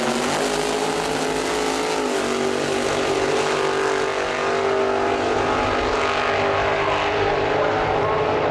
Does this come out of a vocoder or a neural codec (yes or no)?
no